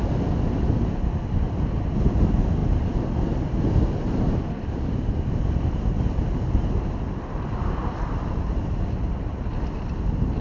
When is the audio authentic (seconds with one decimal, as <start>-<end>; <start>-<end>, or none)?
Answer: 0.0-2.6; 5.4-10.4